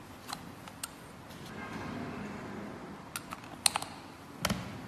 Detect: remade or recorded recorded